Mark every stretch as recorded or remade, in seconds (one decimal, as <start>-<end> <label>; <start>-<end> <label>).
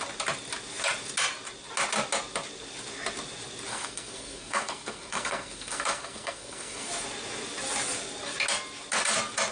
0.0-3.7 recorded; 3.7-6.9 remade; 6.9-9.5 recorded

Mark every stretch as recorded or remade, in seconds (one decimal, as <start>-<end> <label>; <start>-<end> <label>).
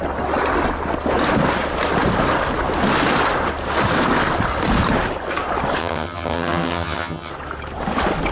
0.0-5.8 recorded; 5.8-7.3 remade; 7.3-8.3 recorded